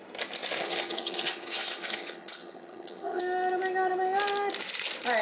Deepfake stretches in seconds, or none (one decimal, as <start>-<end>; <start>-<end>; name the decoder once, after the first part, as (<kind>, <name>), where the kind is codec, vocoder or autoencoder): 0.6-3.2 (vocoder, HiFi-GAN)